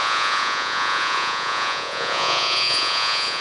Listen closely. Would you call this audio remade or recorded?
remade